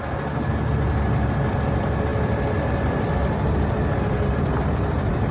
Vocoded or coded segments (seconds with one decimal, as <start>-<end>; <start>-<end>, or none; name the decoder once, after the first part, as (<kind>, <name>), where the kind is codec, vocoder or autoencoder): none